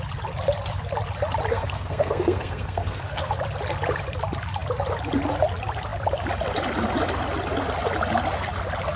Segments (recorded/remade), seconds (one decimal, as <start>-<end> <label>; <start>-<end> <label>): 0.0-1.5 recorded; 1.5-3.3 remade; 3.3-9.0 recorded